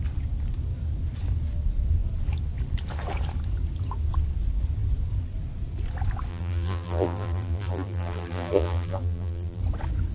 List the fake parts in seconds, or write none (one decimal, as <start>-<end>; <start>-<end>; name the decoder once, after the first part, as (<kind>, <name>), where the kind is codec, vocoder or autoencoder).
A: 6.3-9.6 (vocoder, BigVGAN v2)